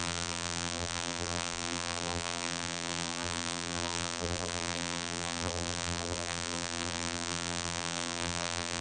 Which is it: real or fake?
fake